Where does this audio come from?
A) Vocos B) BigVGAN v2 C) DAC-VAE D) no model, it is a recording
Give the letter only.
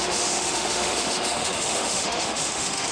C